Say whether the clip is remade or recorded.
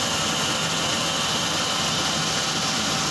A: recorded